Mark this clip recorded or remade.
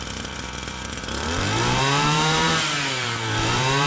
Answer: remade